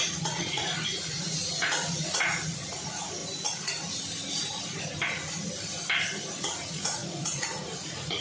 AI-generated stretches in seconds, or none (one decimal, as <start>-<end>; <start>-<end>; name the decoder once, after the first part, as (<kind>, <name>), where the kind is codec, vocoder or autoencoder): 0.0-3.2 (vocoder, Vocos); 6.4-8.2